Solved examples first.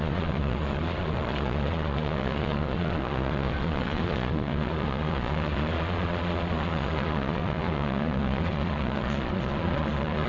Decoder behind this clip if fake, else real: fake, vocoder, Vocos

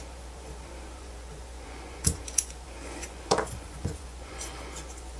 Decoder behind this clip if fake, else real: fake, vocoder, Vocos